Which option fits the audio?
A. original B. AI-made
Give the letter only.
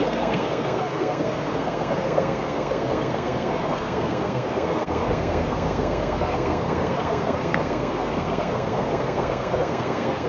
B